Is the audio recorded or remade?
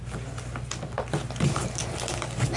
remade